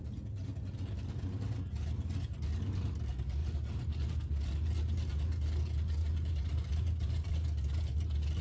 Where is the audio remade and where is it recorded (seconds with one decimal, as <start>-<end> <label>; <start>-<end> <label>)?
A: 0.0-3.4 recorded; 3.4-4.0 remade; 4.0-6.0 recorded; 6.0-7.3 remade; 7.3-8.4 recorded